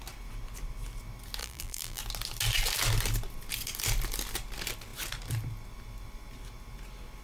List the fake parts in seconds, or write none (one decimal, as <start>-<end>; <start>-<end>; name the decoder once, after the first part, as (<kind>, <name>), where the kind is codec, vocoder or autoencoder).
1.4-2.0 (vocoder, BigVGAN v2)